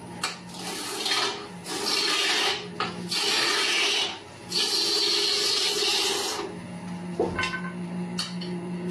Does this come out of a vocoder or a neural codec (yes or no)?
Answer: no